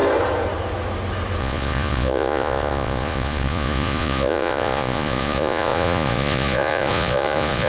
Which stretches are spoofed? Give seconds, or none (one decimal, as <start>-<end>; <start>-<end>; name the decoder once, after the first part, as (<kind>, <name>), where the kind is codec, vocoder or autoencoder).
1.4-7.7 (vocoder, Vocos)